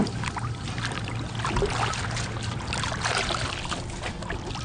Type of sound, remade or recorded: recorded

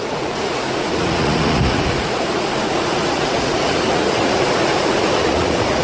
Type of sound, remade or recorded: remade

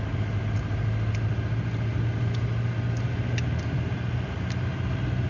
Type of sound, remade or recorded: recorded